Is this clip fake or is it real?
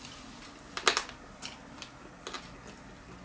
real